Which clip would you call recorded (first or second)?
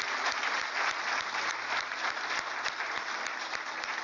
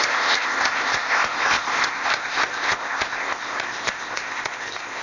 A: first